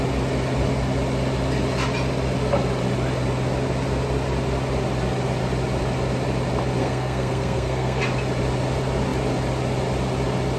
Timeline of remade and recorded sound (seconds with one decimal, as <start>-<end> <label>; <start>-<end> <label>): 0.0-6.8 recorded; 6.8-8.0 remade; 8.0-10.6 recorded